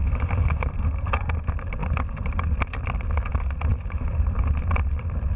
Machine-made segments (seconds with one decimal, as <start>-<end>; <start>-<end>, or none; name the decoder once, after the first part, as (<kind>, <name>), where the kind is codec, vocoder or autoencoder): none